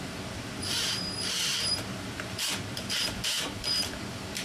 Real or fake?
fake